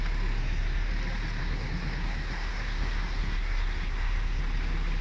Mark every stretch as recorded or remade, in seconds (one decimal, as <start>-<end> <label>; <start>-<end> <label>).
0.0-0.4 recorded; 0.4-0.9 remade; 0.9-1.4 recorded; 1.4-4.4 remade; 4.4-5.0 recorded